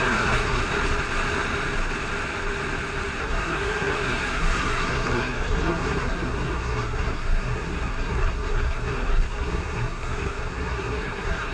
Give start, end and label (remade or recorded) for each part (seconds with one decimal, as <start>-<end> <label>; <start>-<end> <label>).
0.0-0.6 remade; 0.6-3.2 recorded; 3.2-11.5 remade